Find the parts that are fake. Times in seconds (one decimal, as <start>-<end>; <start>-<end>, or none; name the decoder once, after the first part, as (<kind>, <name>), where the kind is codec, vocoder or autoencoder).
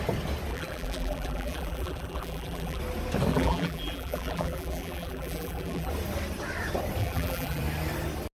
0.5-2.8 (vocoder, BigVGAN v2); 3.3-5.9; 7.0-7.6